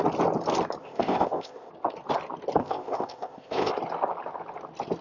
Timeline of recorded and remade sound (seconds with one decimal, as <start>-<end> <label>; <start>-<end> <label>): 0.0-0.8 recorded; 0.8-1.7 remade; 1.7-2.6 recorded; 2.6-3.7 remade; 3.7-5.0 recorded